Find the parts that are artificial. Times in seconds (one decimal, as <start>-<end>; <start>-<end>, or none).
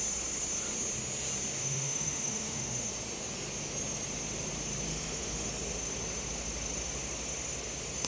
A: 1.6-2.9; 4.9-5.5